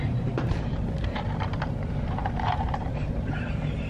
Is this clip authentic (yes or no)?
no